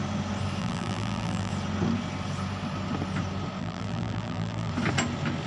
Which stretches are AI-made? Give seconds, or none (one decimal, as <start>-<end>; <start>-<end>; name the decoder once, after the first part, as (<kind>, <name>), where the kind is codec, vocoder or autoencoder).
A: 0.6-1.5 (vocoder, BigVGAN v2); 3.6-4.7